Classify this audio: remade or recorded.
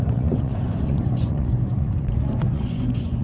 remade